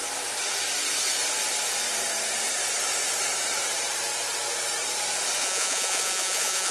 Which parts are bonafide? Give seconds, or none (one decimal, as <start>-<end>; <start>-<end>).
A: 0.0-5.4